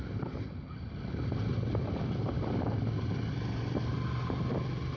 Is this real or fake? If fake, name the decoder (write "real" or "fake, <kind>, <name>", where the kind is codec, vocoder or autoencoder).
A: real